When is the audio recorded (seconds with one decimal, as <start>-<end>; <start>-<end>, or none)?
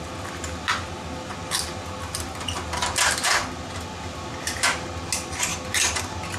0.0-6.4